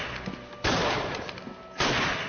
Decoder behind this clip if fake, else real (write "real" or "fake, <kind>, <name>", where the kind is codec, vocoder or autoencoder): real